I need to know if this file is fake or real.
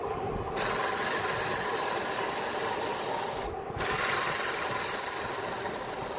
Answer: real